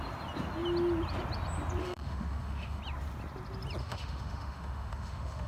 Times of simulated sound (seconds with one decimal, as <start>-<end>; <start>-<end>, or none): 1.8-2.8; 3.8-5.5